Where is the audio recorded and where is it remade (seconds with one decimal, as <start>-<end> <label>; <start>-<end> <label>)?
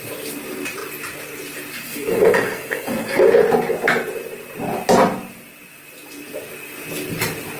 0.0-1.8 recorded; 1.8-3.3 remade; 3.3-7.6 recorded